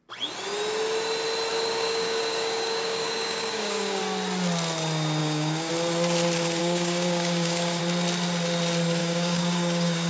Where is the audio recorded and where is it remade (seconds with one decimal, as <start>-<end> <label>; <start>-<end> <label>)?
0.0-1.5 recorded; 1.5-4.0 remade; 4.0-5.2 recorded; 5.2-5.7 remade; 5.7-6.6 recorded; 6.6-7.8 remade; 7.8-9.0 recorded; 9.0-10.1 remade